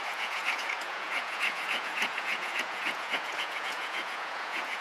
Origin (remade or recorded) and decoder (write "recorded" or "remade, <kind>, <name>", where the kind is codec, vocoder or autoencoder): remade, vocoder, Vocos